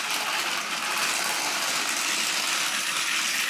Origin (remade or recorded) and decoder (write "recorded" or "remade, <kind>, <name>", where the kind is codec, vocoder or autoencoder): recorded